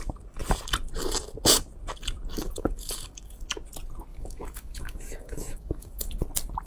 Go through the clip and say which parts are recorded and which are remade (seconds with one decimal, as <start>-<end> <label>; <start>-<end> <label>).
0.0-2.3 recorded; 2.3-3.4 remade; 3.4-4.1 recorded; 4.1-6.2 remade; 6.2-6.7 recorded